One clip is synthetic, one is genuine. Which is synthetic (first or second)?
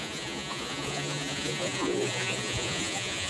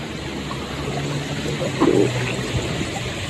first